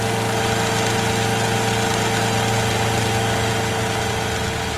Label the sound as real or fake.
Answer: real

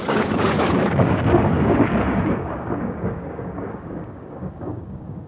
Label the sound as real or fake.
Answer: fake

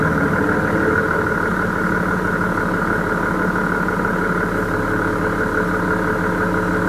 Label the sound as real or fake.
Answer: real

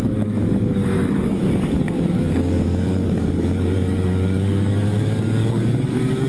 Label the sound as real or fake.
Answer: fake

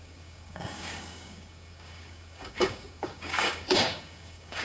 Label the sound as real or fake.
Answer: fake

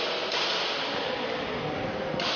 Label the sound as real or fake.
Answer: real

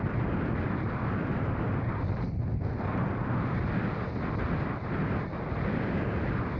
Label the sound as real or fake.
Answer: real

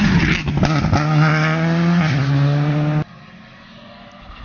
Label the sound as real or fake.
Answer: real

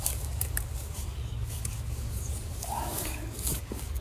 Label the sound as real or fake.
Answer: fake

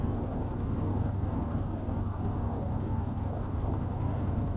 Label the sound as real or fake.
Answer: fake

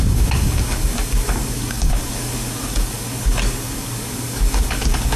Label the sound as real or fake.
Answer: fake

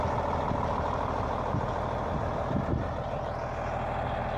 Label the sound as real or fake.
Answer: real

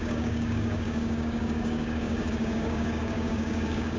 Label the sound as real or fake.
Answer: fake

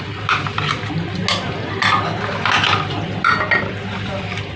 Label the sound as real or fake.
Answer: real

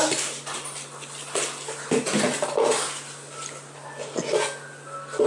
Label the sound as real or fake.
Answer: real